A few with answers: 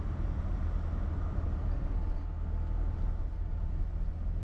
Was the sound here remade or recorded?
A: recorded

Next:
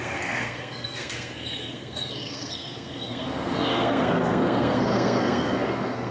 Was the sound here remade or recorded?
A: remade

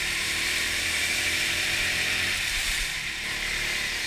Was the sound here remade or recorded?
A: remade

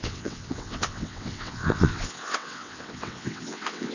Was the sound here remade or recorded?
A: remade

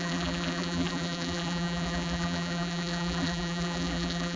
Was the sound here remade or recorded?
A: remade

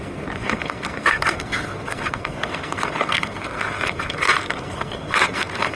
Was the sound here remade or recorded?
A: remade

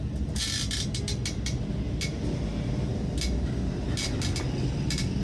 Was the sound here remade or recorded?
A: recorded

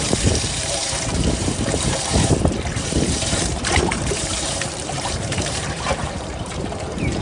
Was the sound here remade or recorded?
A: remade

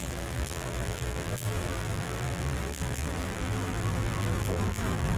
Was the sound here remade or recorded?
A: remade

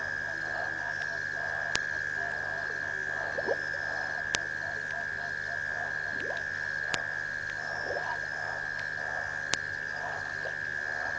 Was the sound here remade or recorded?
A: recorded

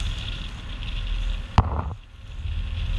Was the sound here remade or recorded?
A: recorded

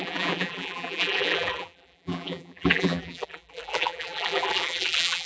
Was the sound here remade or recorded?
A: remade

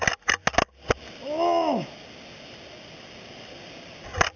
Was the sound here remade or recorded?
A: recorded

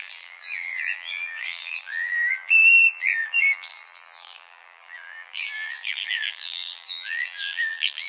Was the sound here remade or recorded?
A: remade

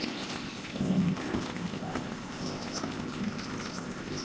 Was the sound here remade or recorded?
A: remade